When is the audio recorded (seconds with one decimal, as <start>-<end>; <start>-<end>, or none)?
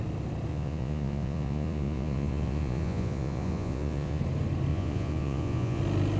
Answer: 0.0-0.5; 4.2-4.7; 5.8-6.2